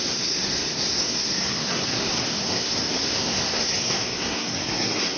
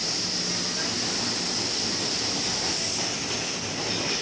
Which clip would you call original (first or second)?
second